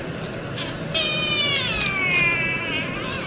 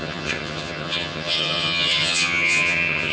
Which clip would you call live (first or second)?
first